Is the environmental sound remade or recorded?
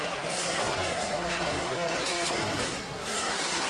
remade